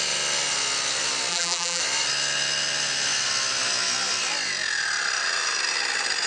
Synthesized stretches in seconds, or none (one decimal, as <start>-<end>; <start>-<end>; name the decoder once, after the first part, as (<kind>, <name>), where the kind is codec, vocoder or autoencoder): 1.3-1.8 (vocoder, BigVGAN v2)